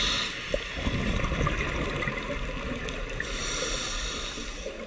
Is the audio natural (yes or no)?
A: yes